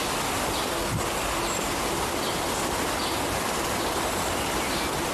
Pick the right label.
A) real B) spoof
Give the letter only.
A